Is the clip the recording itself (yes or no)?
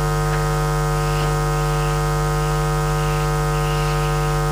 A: yes